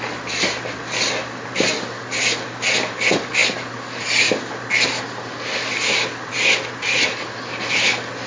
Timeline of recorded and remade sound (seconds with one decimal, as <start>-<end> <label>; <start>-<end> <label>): 0.0-8.3 recorded